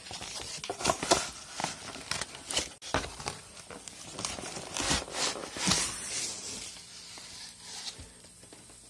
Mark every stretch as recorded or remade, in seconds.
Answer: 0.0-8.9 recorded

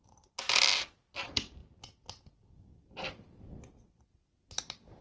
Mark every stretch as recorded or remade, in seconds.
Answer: 0.0-5.0 recorded